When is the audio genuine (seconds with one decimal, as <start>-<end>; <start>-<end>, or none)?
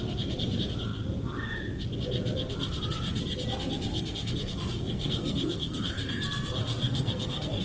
0.0-3.9